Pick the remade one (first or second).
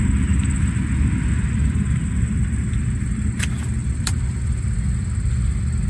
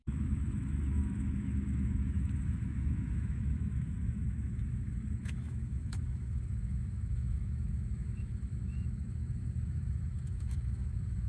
second